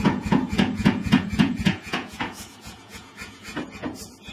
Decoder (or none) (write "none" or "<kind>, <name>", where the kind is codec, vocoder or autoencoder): vocoder, Vocos